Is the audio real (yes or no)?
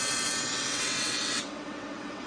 no